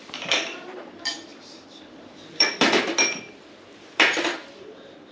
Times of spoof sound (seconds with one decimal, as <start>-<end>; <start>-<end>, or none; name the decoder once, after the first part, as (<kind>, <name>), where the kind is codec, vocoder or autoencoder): 0.0-5.1 (vocoder, BigVGAN v2)